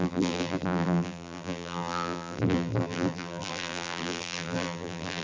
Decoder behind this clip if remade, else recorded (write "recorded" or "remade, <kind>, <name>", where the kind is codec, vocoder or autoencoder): remade, vocoder, BigVGAN v2